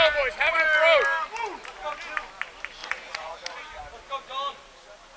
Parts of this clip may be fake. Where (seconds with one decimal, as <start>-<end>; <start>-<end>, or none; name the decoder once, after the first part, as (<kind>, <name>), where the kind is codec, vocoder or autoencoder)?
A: 2.8-3.8 (vocoder, Vocos)

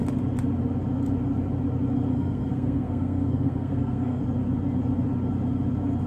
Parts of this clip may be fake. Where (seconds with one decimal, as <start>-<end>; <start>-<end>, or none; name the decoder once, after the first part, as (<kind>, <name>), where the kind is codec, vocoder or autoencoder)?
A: 2.1-4.2 (codec, SNAC)